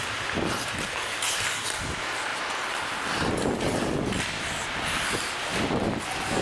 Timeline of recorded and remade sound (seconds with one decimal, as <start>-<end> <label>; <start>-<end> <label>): 0.0-6.4 remade